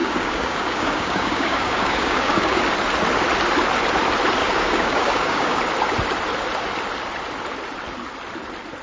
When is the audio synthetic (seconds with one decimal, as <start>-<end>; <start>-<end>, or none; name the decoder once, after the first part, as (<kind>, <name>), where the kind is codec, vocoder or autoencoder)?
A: 0.0-2.6 (codec, DAC); 4.4-5.6

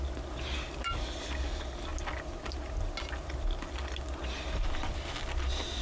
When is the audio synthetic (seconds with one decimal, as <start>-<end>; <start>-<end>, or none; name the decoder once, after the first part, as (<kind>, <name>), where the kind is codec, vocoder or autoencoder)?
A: none